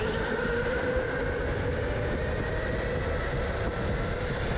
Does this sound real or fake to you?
real